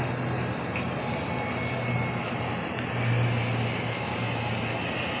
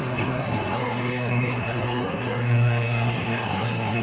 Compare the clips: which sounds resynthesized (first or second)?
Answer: second